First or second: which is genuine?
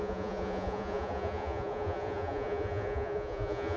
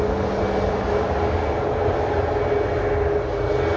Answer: second